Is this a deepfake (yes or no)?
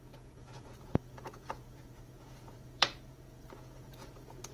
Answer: yes